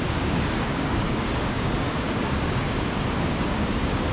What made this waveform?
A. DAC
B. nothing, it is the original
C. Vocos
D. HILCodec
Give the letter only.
A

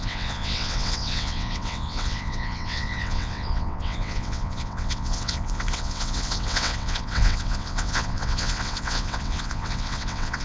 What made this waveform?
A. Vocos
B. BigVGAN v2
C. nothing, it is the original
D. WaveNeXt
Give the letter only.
D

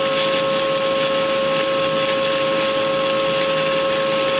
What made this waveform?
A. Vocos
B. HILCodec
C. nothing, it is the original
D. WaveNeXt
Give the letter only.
C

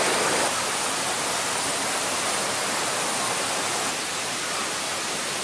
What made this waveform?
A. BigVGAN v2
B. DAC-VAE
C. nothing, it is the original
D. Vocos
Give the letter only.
C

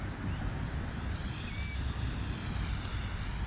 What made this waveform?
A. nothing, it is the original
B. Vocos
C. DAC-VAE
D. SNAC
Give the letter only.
A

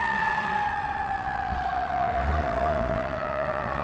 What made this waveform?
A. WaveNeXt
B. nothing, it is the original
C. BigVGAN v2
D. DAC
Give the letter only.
A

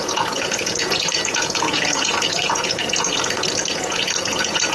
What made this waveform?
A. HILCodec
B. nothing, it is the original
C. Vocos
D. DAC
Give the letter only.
C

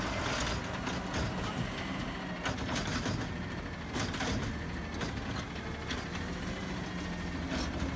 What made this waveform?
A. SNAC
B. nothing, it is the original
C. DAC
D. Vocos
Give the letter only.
B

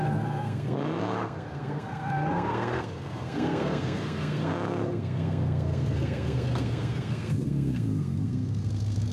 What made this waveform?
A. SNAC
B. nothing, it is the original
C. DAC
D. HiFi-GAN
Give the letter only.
A